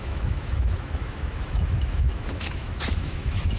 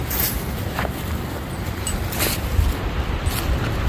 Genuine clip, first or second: second